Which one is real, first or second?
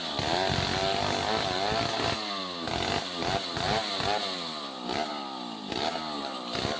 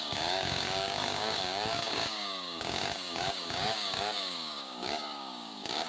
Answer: first